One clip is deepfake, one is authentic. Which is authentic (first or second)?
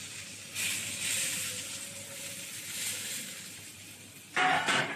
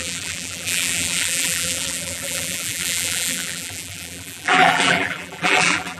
first